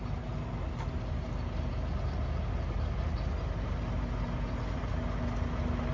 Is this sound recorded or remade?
recorded